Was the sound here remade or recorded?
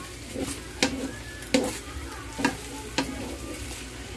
recorded